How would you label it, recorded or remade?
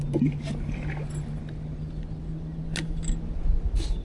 recorded